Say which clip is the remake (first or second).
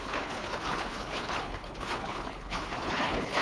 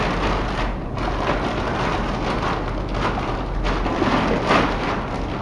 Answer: first